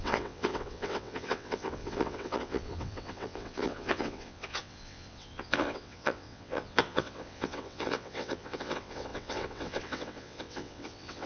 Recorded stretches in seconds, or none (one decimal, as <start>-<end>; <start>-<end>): none